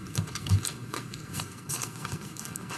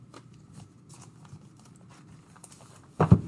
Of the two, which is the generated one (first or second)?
first